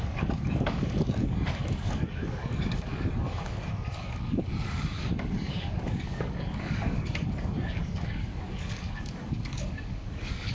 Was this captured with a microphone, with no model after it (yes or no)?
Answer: no